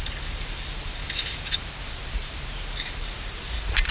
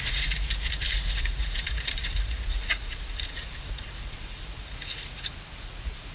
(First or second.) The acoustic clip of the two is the first